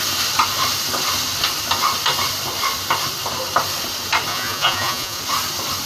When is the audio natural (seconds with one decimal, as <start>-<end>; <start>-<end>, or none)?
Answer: 0.0-4.3; 5.2-5.9